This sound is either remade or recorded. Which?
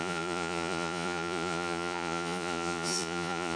remade